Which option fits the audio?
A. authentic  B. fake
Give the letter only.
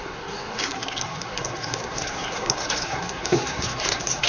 B